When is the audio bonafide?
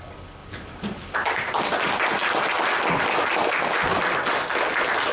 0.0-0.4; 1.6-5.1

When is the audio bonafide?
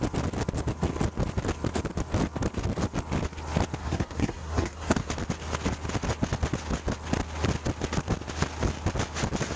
0.0-3.8; 5.1-9.6